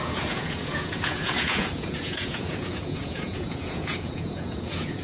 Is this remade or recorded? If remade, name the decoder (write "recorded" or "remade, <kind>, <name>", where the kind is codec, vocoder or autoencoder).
remade, vocoder, Vocos